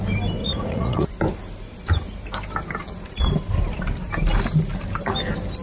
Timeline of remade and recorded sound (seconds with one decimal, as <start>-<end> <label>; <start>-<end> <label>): 0.0-0.4 recorded; 0.4-1.1 remade; 1.1-2.8 recorded; 2.8-3.3 remade; 3.3-5.6 recorded